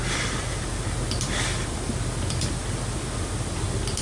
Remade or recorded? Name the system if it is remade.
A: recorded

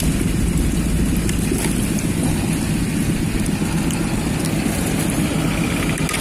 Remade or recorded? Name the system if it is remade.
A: recorded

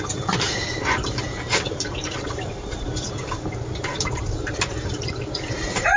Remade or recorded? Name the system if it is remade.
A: remade, vocoder, BigVGAN v2